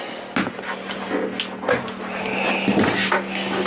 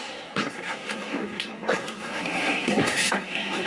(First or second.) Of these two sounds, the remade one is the second